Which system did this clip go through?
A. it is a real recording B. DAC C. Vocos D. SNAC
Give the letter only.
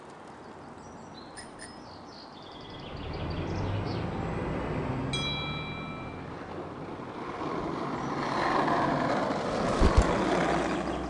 A